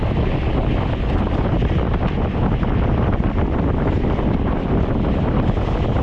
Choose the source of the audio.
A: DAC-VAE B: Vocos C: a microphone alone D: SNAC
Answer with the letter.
C